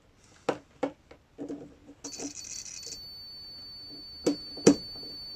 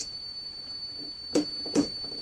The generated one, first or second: second